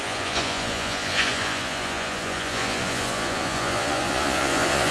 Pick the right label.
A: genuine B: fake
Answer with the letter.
B